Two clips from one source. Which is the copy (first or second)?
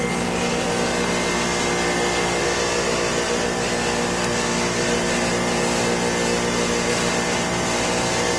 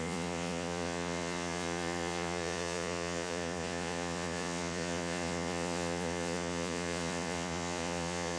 second